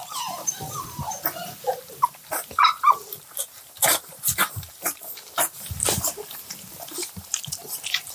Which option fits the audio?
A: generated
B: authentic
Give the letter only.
A